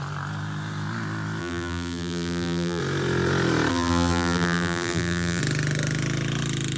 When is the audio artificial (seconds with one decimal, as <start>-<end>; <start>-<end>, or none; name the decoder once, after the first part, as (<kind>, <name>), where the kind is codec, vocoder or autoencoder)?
1.4-2.8 (vocoder, BigVGAN v2); 3.7-5.4